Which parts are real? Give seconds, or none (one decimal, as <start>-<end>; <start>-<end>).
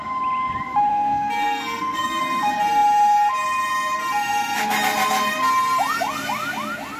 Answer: 0.0-0.9; 2.2-7.0